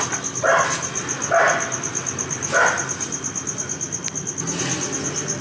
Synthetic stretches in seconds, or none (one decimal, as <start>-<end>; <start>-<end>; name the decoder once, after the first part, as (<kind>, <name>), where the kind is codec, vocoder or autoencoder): none